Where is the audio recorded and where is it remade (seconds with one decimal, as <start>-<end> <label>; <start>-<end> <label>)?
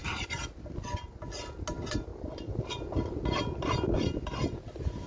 0.0-0.8 remade; 0.8-2.1 recorded; 2.1-4.4 remade; 4.4-5.1 recorded